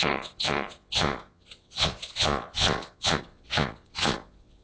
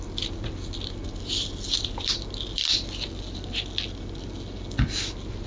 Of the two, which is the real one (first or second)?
second